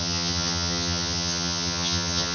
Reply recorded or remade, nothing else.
remade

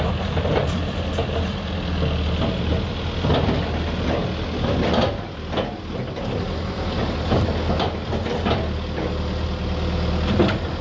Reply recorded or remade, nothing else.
recorded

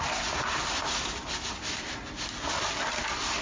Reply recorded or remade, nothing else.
recorded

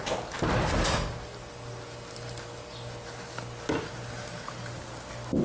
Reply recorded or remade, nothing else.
recorded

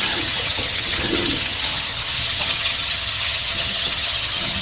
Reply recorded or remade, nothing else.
remade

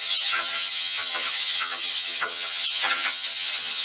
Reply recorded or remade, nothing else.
remade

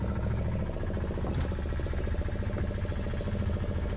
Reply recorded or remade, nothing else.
recorded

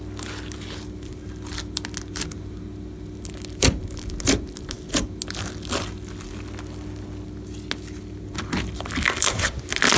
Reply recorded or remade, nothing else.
recorded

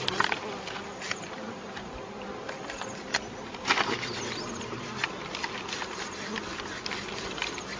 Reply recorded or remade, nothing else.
recorded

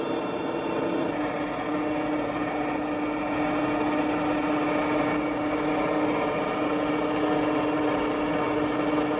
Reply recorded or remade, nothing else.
recorded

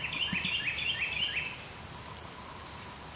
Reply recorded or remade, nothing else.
recorded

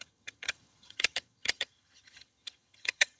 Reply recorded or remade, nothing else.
remade